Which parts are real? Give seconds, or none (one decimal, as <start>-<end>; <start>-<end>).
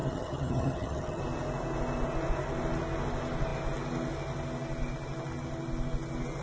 1.2-6.4